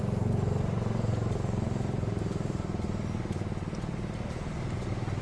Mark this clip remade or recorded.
recorded